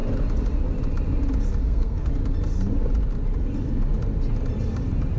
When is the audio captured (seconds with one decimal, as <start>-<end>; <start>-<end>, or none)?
0.0-1.6; 2.1-5.2